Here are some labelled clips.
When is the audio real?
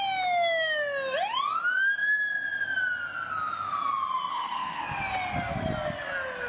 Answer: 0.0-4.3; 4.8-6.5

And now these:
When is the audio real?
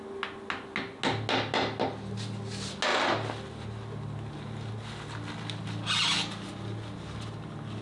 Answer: 0.0-7.8